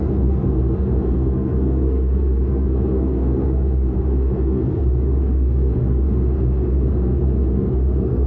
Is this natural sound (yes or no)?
no